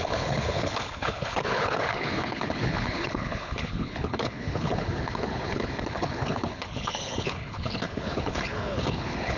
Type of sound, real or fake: fake